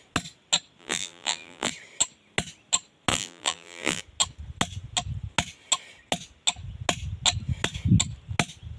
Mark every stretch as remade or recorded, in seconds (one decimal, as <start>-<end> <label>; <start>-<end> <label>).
0.0-0.8 recorded; 0.8-1.7 remade; 1.7-3.1 recorded; 3.1-4.0 remade; 4.0-8.8 recorded